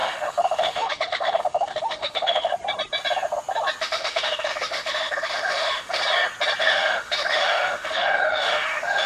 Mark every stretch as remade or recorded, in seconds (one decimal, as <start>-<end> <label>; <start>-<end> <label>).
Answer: 0.0-2.5 remade; 2.5-3.8 recorded; 3.8-6.0 remade; 6.0-6.6 recorded; 6.6-9.1 remade